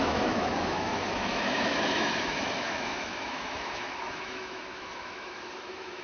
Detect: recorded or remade remade